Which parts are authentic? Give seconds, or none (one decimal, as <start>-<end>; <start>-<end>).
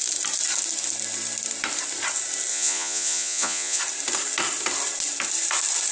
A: 0.0-2.5; 3.8-5.9